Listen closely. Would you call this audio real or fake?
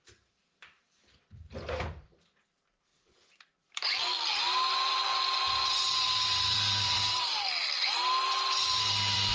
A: fake